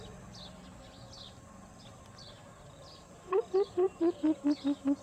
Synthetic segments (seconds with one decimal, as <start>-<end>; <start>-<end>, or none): 2.4-4.6